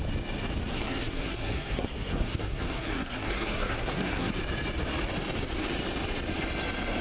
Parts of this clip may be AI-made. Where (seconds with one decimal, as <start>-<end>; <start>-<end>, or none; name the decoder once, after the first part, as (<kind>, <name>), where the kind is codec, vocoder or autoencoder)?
0.7-4.3 (codec, SNAC)